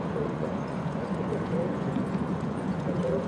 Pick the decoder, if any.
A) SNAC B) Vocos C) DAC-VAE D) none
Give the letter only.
B